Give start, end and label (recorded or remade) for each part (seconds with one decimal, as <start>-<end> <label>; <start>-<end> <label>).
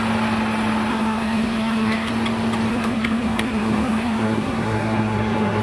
0.0-0.9 recorded; 0.9-2.1 remade; 2.1-2.7 recorded; 2.7-5.6 remade